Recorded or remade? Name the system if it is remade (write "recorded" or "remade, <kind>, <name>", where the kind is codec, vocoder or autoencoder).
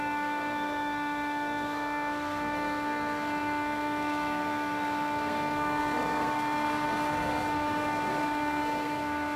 remade, codec, SNAC